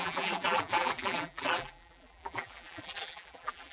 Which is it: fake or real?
fake